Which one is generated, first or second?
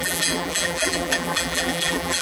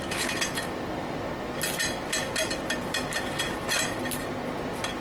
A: first